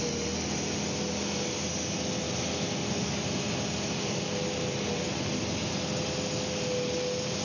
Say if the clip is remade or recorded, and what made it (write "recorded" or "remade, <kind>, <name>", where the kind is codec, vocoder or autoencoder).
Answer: recorded